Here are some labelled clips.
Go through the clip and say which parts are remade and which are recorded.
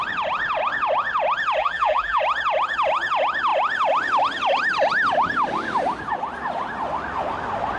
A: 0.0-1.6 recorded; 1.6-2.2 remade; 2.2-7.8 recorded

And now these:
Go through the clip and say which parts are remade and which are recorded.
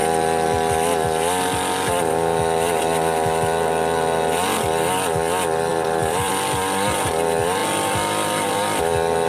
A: 0.0-5.7 recorded; 5.7-6.3 remade; 6.3-9.3 recorded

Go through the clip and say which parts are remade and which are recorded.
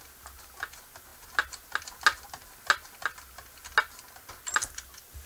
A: 0.0-5.3 recorded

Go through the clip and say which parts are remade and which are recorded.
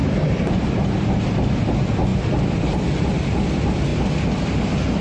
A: 0.0-1.2 remade; 1.2-2.1 recorded; 2.1-4.2 remade; 4.2-5.0 recorded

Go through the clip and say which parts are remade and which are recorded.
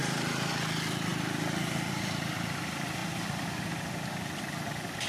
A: 0.0-0.5 remade; 0.5-5.1 recorded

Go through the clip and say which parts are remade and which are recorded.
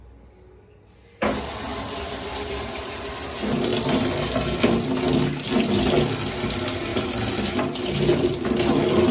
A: 0.0-1.7 recorded; 1.7-3.1 remade; 3.1-6.9 recorded; 6.9-8.7 remade; 8.7-9.1 recorded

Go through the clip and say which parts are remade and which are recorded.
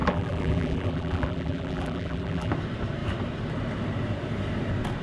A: 0.0-2.5 remade; 2.5-5.0 recorded